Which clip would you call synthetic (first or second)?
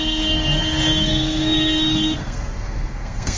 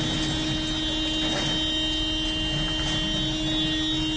first